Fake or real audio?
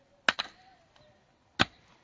real